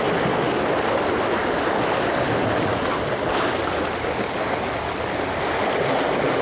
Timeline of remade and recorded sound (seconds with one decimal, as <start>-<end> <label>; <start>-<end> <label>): 0.0-6.4 recorded